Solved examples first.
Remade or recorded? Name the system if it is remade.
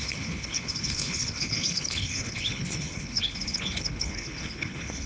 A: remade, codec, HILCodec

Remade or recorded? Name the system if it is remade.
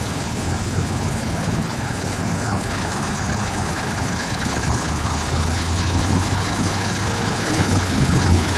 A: remade, codec, HILCodec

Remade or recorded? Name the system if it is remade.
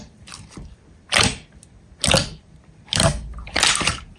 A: recorded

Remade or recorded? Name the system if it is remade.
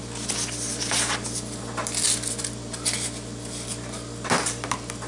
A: recorded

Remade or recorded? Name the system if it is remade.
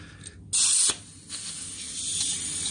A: recorded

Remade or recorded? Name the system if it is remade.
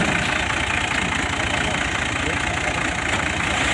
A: recorded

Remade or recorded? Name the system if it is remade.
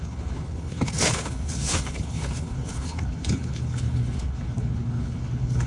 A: remade, codec, HILCodec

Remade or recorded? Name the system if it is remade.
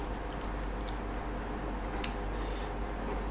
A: recorded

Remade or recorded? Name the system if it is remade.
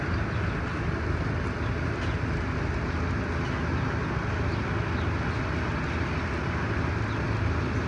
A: recorded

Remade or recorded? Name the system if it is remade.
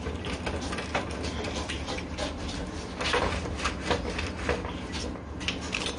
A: recorded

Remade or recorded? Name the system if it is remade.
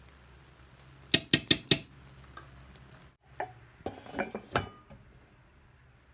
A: recorded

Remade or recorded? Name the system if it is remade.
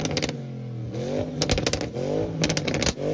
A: recorded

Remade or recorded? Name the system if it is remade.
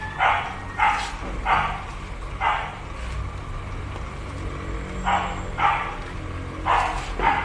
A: recorded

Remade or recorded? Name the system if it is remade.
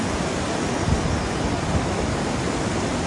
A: recorded